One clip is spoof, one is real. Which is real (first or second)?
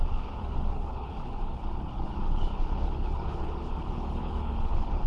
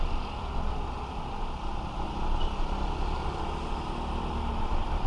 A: second